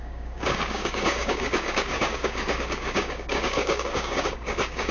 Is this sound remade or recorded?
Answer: remade